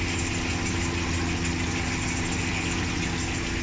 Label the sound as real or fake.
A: real